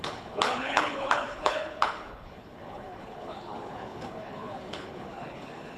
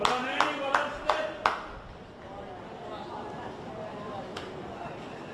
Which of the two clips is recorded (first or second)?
second